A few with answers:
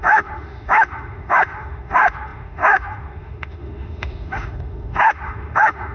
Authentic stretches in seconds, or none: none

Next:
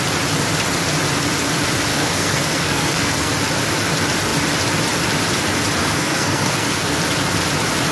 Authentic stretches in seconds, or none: 0.0-1.9; 3.3-5.8; 7.0-7.9

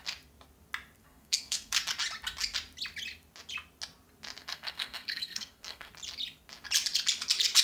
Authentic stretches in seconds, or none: 0.0-1.0; 1.8-4.4; 5.9-7.6

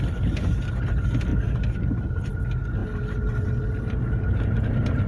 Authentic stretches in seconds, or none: 0.0-5.1

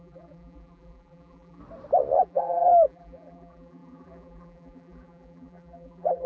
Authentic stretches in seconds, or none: 1.6-2.2

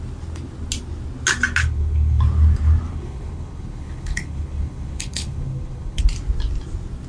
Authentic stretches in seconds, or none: 0.0-1.6; 2.2-2.9; 6.0-7.1